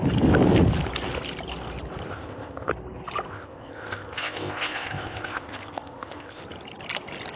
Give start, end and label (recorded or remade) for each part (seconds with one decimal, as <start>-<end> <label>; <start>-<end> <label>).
0.0-2.1 recorded; 2.1-2.7 remade; 2.7-3.3 recorded; 3.3-6.4 remade; 6.4-7.4 recorded